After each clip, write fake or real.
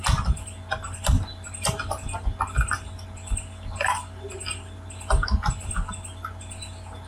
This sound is real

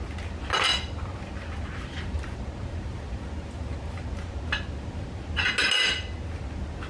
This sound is real